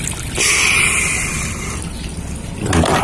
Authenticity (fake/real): real